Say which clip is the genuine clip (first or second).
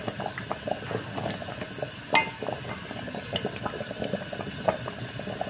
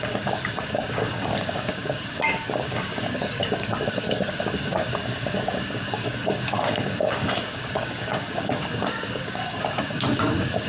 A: first